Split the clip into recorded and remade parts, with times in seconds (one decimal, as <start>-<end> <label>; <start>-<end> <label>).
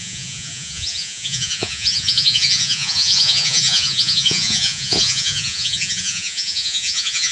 0.0-7.3 remade